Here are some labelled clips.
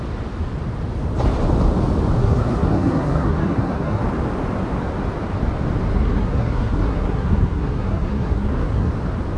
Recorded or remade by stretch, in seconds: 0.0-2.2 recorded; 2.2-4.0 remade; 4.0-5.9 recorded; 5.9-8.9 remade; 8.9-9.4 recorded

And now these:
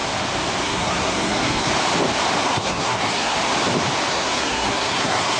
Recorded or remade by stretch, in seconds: 0.0-0.6 recorded; 0.6-1.7 remade; 1.7-2.4 recorded; 2.4-3.4 remade; 3.4-4.1 recorded; 4.1-5.4 remade

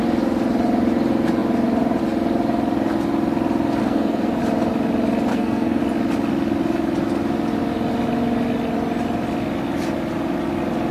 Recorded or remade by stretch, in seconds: 0.0-3.8 recorded; 3.8-4.4 remade; 4.4-5.3 recorded; 5.3-5.8 remade; 5.8-10.9 recorded

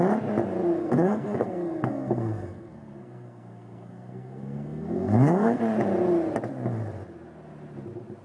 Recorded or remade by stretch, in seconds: 0.0-0.8 recorded; 0.8-5.6 remade; 5.6-8.2 recorded

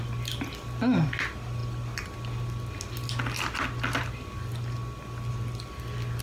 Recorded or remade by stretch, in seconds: 0.0-6.2 recorded

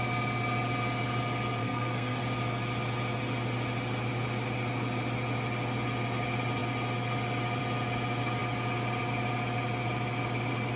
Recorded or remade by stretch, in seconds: 0.0-1.6 recorded; 1.6-2.2 remade; 2.2-10.8 recorded

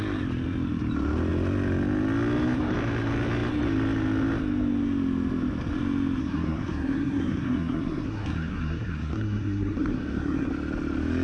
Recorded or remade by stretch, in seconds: 0.0-6.2 recorded; 6.2-10.5 remade; 10.5-11.2 recorded